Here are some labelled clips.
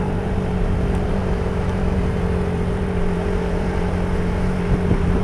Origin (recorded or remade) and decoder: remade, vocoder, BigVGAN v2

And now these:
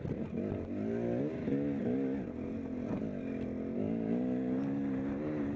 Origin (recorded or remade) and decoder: recorded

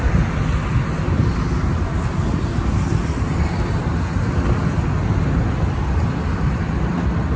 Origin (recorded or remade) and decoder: recorded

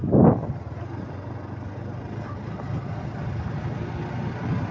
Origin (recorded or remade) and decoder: recorded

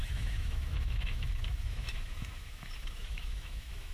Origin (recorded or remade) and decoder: remade, autoencoder, DAC-VAE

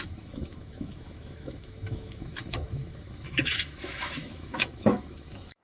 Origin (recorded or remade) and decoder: remade, autoencoder, DAC-VAE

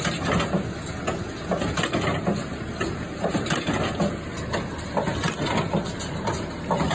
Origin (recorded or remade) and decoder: recorded